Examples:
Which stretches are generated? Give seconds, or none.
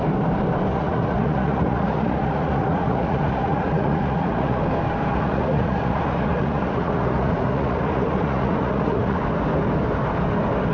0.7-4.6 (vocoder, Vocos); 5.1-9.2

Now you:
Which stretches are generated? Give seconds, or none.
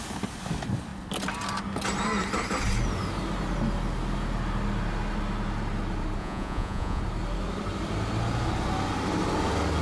6.2-7.0 (vocoder, Vocos)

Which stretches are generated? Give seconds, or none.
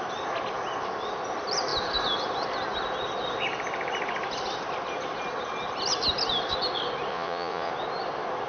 7.1-7.7 (vocoder, Vocos)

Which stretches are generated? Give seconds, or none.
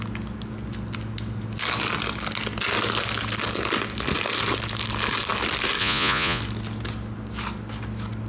5.8-6.4 (vocoder, Vocos)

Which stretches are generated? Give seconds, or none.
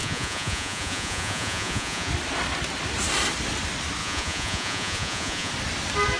0.0-2.1 (vocoder, Vocos); 4.0-5.5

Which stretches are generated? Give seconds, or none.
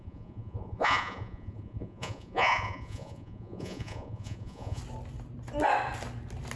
0.0-4.8 (vocoder, Vocos)